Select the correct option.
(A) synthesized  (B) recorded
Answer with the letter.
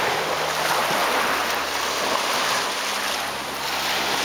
B